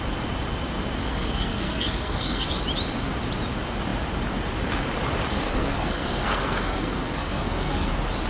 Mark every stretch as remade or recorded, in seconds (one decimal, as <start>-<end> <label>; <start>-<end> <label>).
0.0-1.0 recorded; 1.0-2.6 remade; 2.6-5.3 recorded; 5.3-7.9 remade; 7.9-8.3 recorded